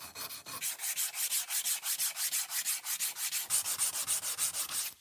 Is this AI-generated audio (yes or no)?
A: no